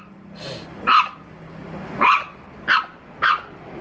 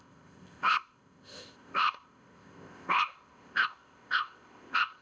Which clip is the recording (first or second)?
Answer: first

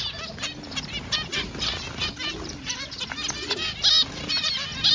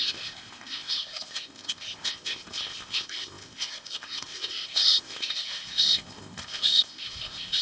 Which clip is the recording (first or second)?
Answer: first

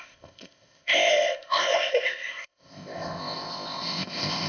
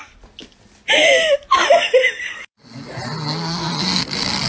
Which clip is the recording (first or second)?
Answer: second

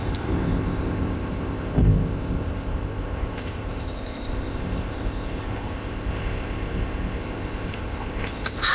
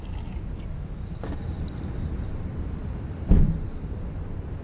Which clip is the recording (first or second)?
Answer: second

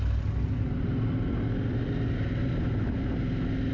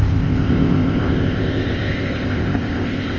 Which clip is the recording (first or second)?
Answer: first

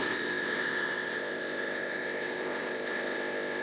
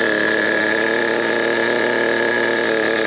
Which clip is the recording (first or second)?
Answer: second